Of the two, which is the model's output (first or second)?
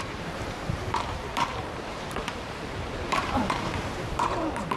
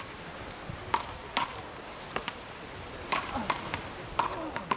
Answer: first